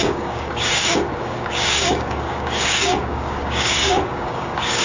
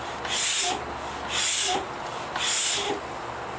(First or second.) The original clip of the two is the second